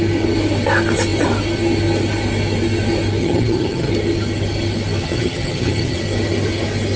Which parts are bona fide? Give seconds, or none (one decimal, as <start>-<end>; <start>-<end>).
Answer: 0.0-3.2; 3.9-5.0; 6.0-7.0